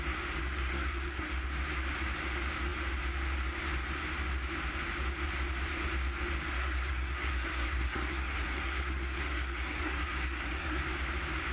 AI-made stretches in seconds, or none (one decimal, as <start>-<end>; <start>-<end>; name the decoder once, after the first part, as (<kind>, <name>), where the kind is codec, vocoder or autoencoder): 0.4-1.3 (codec, SNAC); 6.6-10.8